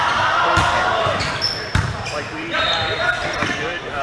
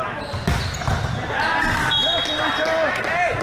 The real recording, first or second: second